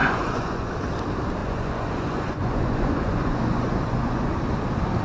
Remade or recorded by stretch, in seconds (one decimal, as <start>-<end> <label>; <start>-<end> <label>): 0.0-0.7 remade; 0.7-1.4 recorded; 1.4-4.3 remade; 4.3-5.0 recorded

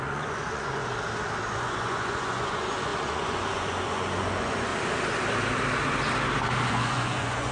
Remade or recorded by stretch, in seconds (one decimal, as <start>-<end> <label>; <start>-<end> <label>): 0.0-0.8 remade; 0.8-1.5 recorded; 1.5-4.7 remade; 4.7-6.7 recorded; 6.7-7.5 remade

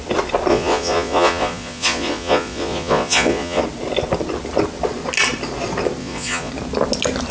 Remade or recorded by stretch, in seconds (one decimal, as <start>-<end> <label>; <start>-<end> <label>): 0.0-0.5 recorded; 0.5-3.6 remade; 3.6-6.0 recorded; 6.0-6.5 remade; 6.5-7.3 recorded

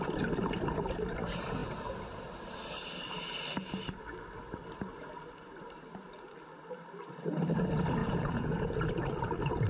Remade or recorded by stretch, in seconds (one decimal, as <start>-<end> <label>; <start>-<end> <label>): 0.0-8.0 recorded; 8.0-8.9 remade; 8.9-9.7 recorded

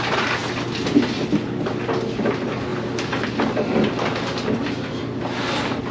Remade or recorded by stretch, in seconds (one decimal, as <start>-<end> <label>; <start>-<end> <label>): 0.0-5.9 recorded

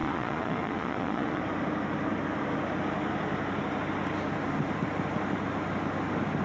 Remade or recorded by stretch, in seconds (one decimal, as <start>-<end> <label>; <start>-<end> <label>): 0.0-1.4 remade; 1.4-6.4 recorded